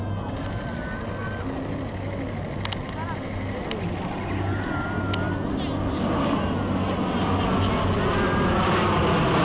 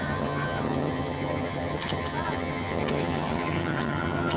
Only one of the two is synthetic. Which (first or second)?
second